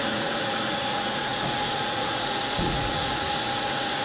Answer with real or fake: fake